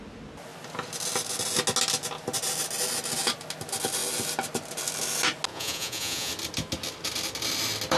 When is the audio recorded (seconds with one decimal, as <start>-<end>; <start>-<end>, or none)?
0.0-5.5; 6.3-8.0